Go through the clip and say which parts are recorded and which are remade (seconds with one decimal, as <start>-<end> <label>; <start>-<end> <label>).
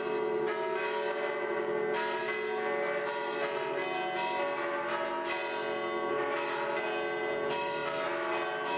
0.0-8.8 recorded